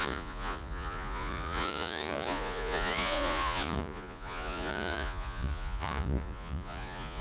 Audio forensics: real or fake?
fake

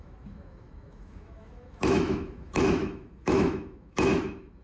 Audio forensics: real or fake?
fake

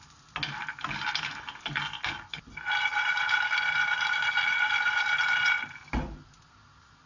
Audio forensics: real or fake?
real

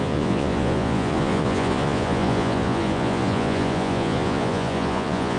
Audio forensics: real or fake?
fake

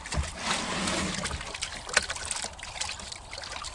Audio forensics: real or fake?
real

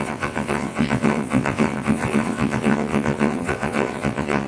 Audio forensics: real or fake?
fake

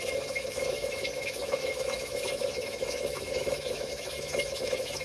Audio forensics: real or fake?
fake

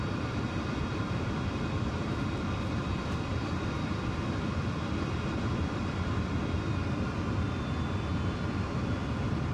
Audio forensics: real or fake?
fake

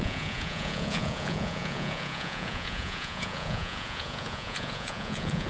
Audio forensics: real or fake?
fake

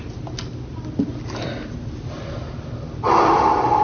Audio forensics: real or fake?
real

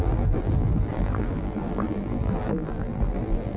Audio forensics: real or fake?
fake